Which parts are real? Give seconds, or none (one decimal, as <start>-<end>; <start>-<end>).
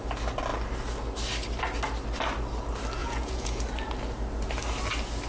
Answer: 0.0-3.0; 3.6-5.3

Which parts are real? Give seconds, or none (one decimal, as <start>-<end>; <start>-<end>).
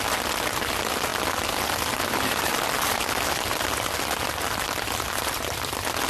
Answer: 0.0-6.1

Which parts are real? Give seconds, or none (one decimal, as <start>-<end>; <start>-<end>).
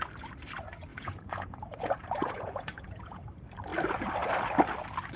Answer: 0.0-0.9; 3.3-5.2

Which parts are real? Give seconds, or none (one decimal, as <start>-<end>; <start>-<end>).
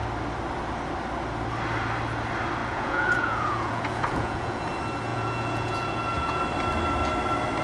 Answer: 0.0-2.6; 4.6-5.1; 6.4-7.6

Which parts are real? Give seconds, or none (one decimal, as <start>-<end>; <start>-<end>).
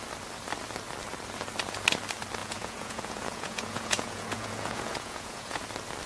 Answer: 0.0-2.4; 5.6-6.1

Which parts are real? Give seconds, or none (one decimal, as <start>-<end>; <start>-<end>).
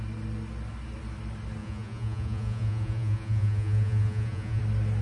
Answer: 0.0-1.6; 4.6-5.0